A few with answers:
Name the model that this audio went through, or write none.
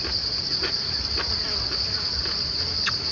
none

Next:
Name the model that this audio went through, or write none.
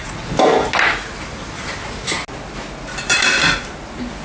none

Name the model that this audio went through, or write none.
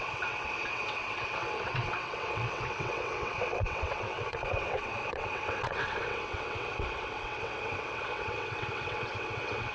vocoder, WaveNeXt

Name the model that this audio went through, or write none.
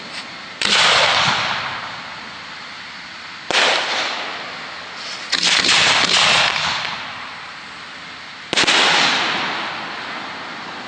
none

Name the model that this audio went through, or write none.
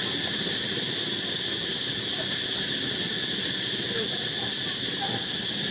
none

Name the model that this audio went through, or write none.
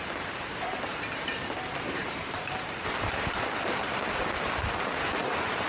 none